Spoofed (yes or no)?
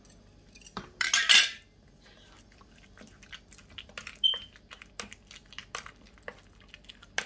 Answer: no